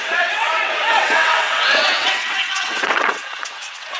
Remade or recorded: remade